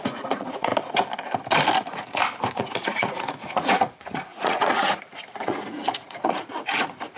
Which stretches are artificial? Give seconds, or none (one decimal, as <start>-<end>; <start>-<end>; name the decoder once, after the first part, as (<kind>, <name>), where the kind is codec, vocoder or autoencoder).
0.0-0.7 (vocoder, Vocos); 2.5-7.2